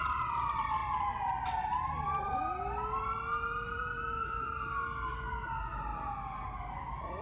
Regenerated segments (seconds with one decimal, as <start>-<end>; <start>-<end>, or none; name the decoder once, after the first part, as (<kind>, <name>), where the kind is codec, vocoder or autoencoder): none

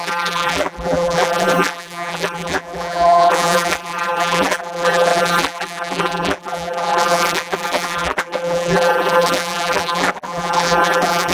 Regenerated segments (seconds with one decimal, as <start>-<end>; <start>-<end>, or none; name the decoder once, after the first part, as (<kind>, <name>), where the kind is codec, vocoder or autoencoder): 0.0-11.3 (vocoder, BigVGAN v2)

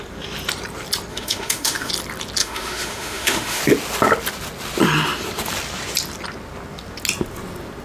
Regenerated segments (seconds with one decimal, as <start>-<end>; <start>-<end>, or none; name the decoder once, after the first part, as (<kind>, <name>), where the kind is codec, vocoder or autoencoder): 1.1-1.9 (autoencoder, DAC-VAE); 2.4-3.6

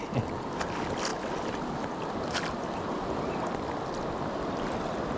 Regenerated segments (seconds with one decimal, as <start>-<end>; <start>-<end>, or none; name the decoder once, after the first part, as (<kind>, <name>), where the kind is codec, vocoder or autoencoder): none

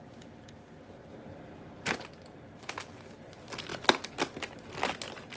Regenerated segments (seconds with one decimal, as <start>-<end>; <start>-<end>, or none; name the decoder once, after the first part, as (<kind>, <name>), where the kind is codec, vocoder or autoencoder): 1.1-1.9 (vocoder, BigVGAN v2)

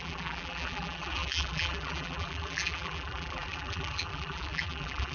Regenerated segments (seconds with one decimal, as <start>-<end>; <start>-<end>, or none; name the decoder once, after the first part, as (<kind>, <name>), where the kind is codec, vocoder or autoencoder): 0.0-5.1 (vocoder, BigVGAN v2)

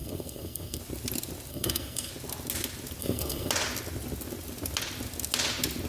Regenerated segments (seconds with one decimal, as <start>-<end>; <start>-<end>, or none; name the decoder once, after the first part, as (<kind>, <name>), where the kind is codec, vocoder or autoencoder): 0.0-0.8 (codec, SNAC); 1.5-2.1; 3.0-3.5